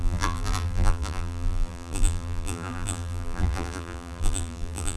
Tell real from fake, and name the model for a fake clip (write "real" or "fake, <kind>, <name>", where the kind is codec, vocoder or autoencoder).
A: fake, vocoder, BigVGAN v2